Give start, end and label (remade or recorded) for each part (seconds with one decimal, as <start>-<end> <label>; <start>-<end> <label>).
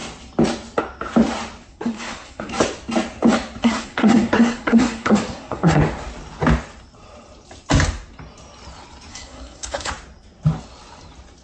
0.0-1.7 recorded; 1.7-2.5 remade; 2.5-3.6 recorded; 3.6-5.8 remade; 5.8-9.1 recorded; 9.1-9.9 remade; 9.9-11.4 recorded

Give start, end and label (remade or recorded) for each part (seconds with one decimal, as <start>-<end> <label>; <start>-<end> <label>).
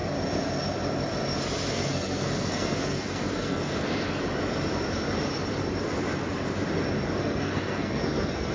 0.0-1.7 recorded; 1.7-3.9 remade; 3.9-7.2 recorded; 7.2-8.5 remade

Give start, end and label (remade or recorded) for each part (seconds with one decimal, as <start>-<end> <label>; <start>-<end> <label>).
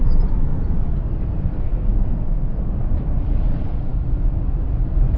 0.0-1.6 recorded; 1.6-2.6 remade; 2.6-5.2 recorded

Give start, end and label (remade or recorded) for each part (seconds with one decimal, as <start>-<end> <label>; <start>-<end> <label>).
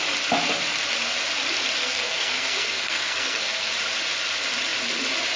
0.0-1.8 recorded; 1.8-3.7 remade; 3.7-5.4 recorded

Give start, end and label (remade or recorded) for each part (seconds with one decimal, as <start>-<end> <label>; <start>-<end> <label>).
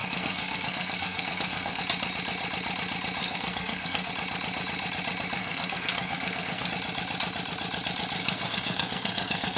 0.0-1.8 remade; 1.8-3.2 recorded; 3.2-4.1 remade; 4.1-5.4 recorded; 5.4-6.7 remade; 6.7-8.2 recorded; 8.2-9.6 remade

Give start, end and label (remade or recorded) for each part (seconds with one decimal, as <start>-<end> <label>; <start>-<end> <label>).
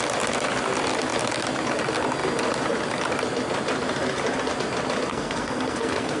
0.0-5.1 recorded; 5.1-6.2 remade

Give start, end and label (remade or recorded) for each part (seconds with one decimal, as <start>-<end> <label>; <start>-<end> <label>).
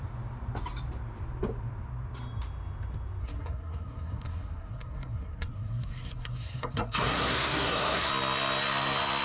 0.0-3.2 recorded; 3.2-8.1 remade; 8.1-9.2 recorded